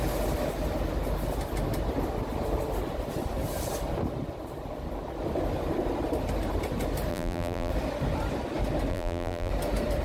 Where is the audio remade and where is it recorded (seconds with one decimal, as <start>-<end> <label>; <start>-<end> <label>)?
0.0-7.1 recorded; 7.1-7.7 remade; 7.7-8.9 recorded; 8.9-9.5 remade; 9.5-10.0 recorded